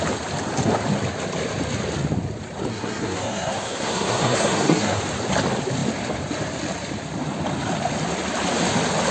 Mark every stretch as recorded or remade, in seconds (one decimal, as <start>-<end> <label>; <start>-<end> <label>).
0.0-2.7 recorded; 2.7-5.0 remade; 5.0-9.1 recorded

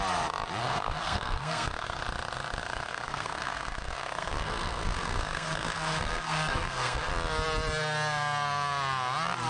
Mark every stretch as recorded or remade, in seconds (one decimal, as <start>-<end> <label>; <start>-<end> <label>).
0.0-0.6 recorded; 0.6-2.0 remade; 2.0-2.6 recorded; 2.6-7.1 remade; 7.1-9.5 recorded